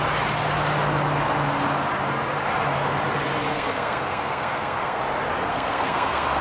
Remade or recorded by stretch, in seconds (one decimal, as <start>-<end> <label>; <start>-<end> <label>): 0.0-3.5 recorded; 3.5-5.0 remade; 5.0-5.5 recorded; 5.5-6.4 remade